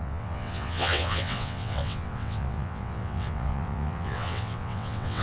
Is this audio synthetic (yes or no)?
yes